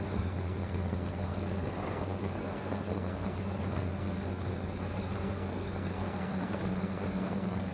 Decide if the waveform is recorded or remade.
remade